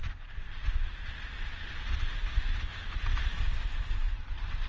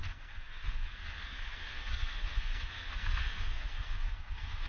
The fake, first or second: second